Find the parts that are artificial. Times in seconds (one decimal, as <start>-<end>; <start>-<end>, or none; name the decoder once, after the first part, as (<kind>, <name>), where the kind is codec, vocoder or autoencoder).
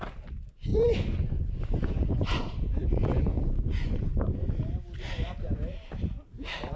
0.7-4.5 (vocoder, Vocos)